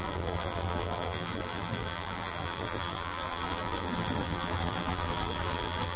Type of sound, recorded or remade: remade